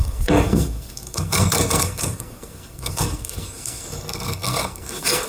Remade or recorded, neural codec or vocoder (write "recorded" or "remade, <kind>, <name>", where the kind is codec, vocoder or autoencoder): remade, codec, SNAC